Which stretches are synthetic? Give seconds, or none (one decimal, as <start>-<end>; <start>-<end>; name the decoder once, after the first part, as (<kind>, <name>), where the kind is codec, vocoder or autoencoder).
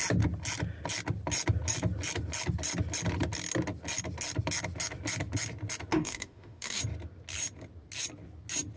5.9-6.8 (autoencoder, DAC-VAE)